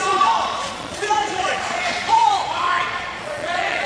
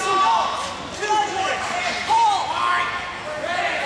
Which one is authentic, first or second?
second